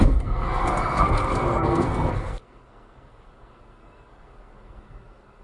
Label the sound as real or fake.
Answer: fake